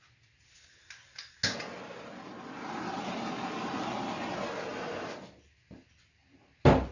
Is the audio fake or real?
real